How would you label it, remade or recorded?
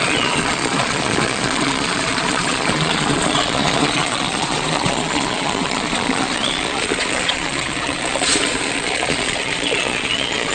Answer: remade